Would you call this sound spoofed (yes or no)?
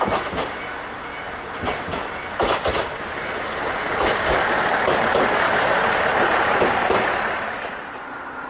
no